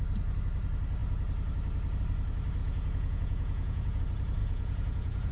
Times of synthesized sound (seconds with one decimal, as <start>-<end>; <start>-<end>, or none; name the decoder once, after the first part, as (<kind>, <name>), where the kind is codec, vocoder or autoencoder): 2.6-4.0 (vocoder, Vocos); 4.4-5.3